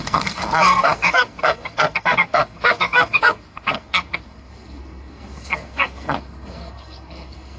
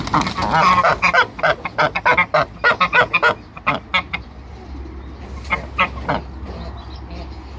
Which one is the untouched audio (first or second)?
second